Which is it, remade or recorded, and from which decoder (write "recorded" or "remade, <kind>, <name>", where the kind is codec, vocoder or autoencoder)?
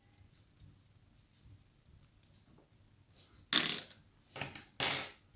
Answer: recorded